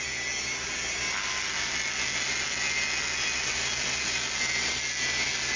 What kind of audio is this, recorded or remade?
recorded